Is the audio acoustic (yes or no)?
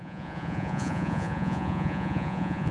no